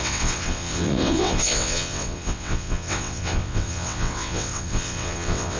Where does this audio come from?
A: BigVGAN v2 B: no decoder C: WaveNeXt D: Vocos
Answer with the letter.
C